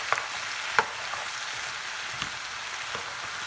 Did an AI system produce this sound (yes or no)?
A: no